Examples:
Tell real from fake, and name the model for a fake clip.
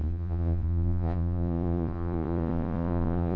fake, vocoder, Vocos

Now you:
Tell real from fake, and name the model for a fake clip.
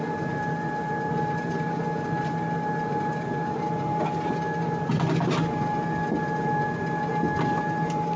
real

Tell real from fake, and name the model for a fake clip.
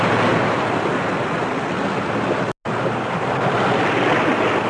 real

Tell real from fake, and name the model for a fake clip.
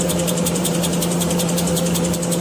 fake, vocoder, BigVGAN v2